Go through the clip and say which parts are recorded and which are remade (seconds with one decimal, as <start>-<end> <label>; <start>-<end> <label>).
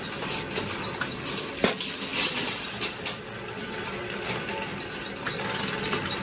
0.0-6.2 recorded